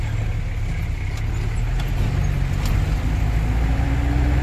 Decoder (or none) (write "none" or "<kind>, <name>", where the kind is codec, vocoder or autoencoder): none